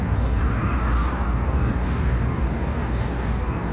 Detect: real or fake fake